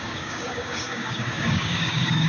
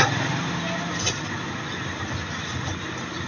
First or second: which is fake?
first